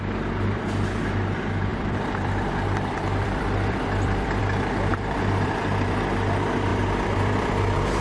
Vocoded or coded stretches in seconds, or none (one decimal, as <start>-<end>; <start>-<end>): 1.7-4.4; 4.9-6.0; 6.7-8.0